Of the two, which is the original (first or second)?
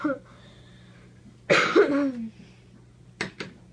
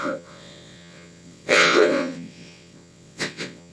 first